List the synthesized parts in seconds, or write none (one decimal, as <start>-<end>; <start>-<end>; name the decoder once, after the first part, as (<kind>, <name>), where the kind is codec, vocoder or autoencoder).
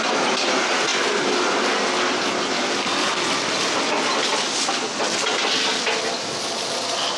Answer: none